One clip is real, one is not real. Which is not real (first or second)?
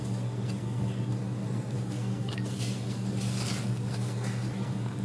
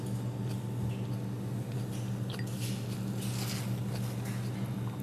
first